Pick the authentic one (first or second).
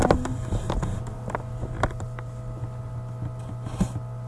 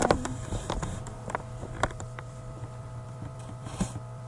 first